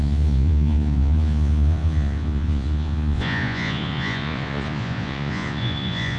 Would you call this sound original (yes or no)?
no